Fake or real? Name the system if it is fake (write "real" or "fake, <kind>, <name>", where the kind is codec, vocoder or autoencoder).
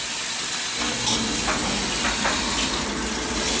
real